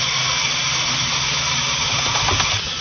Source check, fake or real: real